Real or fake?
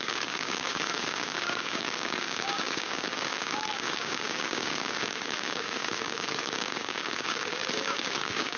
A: fake